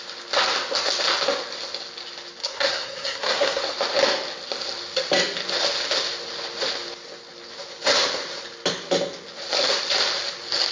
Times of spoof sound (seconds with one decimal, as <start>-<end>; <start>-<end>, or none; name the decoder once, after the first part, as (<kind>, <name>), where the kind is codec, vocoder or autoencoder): 2.4-3.6 (codec, SNAC)